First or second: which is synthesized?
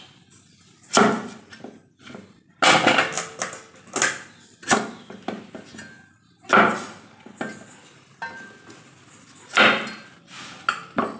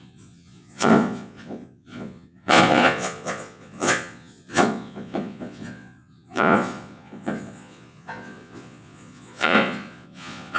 second